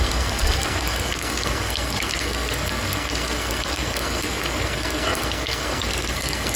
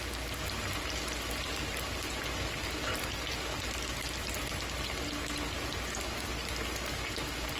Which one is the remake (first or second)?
first